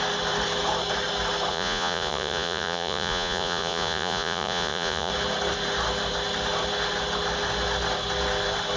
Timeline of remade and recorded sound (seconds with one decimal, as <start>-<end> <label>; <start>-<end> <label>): 0.0-1.5 recorded; 1.5-5.1 remade; 5.1-8.8 recorded